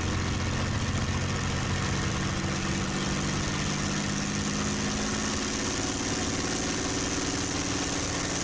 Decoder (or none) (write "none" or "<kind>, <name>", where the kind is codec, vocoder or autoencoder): none